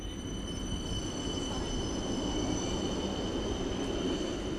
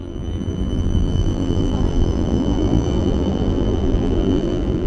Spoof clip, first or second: second